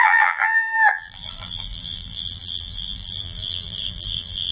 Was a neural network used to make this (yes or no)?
yes